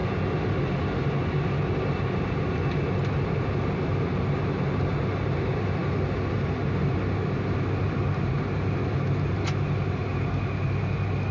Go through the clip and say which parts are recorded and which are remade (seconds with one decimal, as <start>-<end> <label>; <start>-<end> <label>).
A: 0.0-11.3 recorded